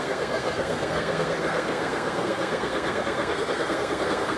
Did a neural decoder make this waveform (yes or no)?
yes